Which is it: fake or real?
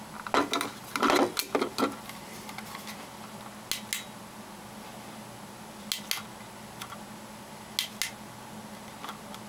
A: real